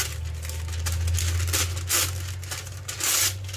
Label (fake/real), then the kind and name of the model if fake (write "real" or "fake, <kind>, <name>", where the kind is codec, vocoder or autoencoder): real